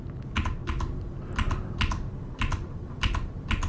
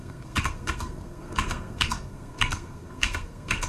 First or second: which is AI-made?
second